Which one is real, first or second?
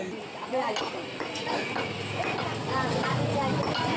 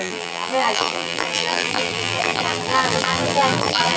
first